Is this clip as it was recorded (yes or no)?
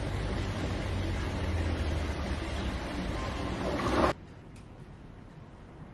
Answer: yes